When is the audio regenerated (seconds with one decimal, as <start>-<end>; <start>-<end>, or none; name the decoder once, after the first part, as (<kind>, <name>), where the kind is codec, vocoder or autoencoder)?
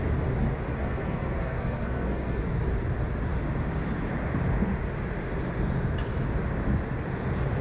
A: 0.7-2.6 (codec, SNAC)